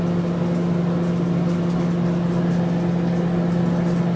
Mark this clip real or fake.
real